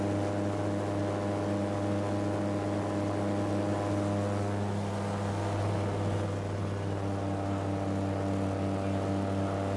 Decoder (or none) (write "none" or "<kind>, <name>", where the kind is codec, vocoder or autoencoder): none